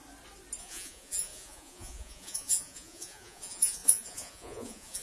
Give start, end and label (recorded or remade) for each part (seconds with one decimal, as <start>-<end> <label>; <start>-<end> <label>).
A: 0.0-0.6 recorded; 0.6-5.0 remade